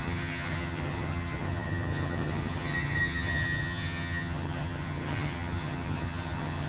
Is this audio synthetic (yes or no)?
yes